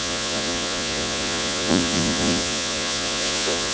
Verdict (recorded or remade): remade